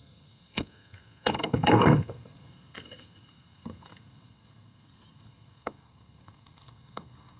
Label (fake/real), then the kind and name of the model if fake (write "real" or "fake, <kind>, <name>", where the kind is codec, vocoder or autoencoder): fake, codec, SNAC